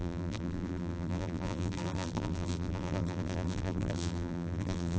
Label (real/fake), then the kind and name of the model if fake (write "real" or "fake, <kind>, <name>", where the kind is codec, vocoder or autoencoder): fake, vocoder, BigVGAN v2